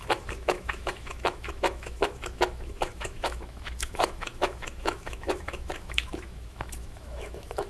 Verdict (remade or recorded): remade